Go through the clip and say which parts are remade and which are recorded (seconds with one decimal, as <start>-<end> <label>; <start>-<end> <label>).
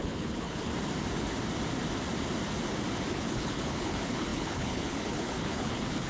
0.0-0.7 remade; 0.7-3.1 recorded; 3.1-6.1 remade